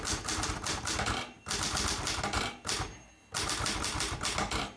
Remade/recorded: recorded